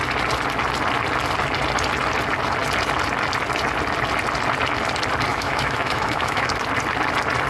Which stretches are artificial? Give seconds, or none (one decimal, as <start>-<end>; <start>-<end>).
5.3-6.5